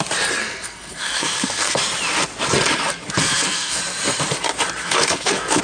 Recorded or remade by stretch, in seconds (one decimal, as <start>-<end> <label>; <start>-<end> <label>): 0.0-0.4 recorded; 0.4-1.8 remade; 1.8-3.2 recorded; 3.2-3.8 remade; 3.8-4.8 recorded; 4.8-5.6 remade

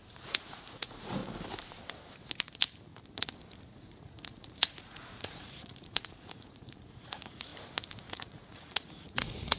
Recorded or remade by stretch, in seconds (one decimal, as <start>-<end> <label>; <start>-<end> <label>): 0.0-1.2 remade; 1.2-3.6 recorded; 3.6-7.5 remade; 7.5-8.1 recorded; 8.1-9.6 remade

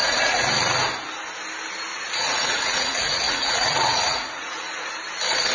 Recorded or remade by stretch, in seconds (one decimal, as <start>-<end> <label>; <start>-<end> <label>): 0.0-0.8 remade; 0.8-1.9 recorded; 1.9-4.9 remade; 4.9-5.5 recorded

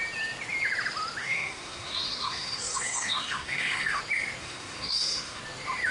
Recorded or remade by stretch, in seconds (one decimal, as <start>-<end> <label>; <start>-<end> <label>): 0.0-1.2 recorded; 1.2-4.0 remade; 4.0-4.4 recorded; 4.4-5.4 remade; 5.4-5.9 recorded